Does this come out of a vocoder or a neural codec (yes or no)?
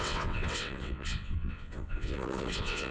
yes